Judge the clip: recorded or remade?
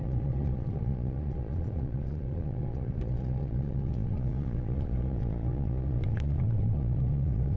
remade